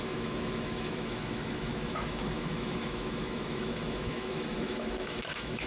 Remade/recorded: remade